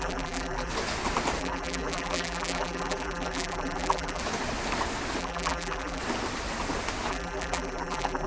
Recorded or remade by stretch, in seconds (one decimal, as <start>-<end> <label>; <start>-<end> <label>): 0.0-0.7 remade; 0.7-1.4 recorded; 1.4-4.2 remade; 4.2-5.2 recorded; 5.2-6.0 remade; 6.0-7.1 recorded; 7.1-8.3 remade